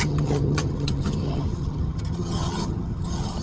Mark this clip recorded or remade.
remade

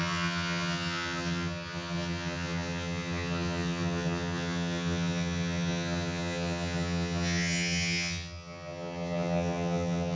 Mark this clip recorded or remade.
remade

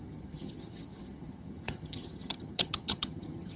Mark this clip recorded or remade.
remade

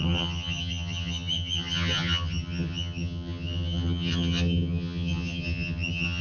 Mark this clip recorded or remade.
remade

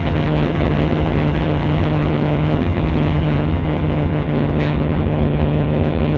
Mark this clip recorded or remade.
remade